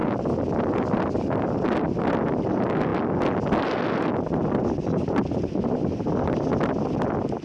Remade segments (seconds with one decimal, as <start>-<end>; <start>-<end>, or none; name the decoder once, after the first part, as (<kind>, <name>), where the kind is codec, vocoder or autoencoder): none